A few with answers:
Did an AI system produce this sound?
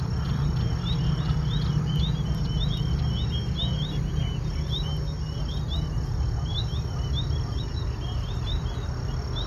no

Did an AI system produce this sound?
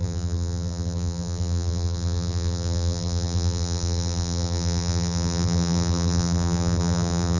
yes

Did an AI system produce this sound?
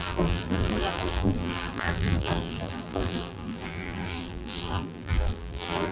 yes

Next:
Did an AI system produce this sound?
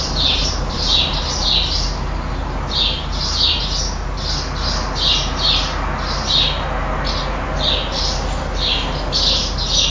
no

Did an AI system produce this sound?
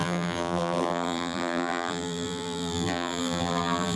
yes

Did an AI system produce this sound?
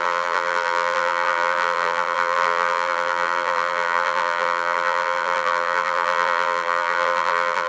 yes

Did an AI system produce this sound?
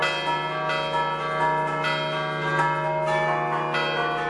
no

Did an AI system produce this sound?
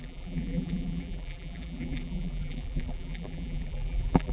yes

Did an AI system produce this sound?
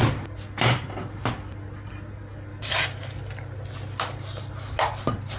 no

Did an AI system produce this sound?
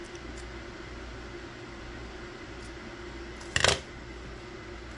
no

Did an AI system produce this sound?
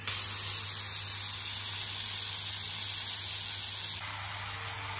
no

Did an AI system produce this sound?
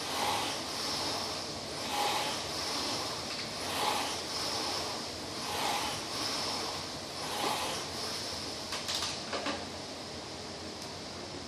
no